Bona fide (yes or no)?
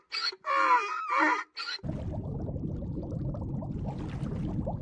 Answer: yes